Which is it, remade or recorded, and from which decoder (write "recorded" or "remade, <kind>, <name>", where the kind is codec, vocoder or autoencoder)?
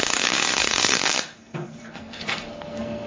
remade, codec, SNAC